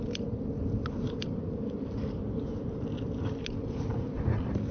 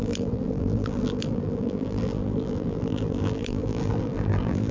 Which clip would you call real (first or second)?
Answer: first